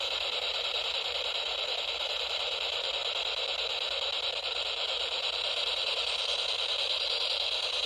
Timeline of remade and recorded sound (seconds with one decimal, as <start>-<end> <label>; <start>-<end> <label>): 0.0-3.0 remade; 3.0-4.4 recorded; 4.4-7.9 remade